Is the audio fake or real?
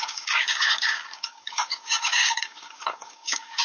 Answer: fake